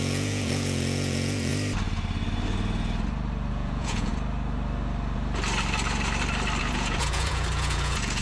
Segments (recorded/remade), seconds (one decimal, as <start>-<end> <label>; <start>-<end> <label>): 0.0-1.5 remade; 1.5-3.5 recorded; 3.5-4.1 remade; 4.1-6.6 recorded; 6.6-8.2 remade